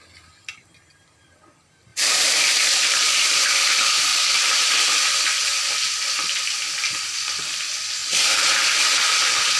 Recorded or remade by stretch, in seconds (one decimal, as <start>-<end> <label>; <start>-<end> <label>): 0.0-1.9 recorded; 1.9-3.5 remade; 3.5-4.1 recorded; 4.1-4.8 remade; 4.8-9.6 recorded